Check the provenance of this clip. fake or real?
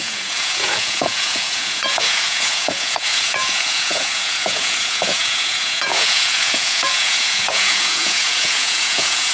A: fake